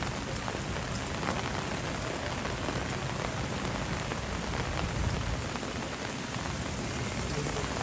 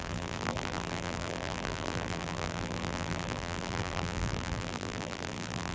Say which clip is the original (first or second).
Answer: first